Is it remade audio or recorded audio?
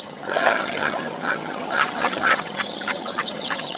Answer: remade